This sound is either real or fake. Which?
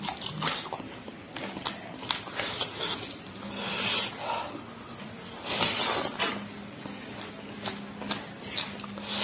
real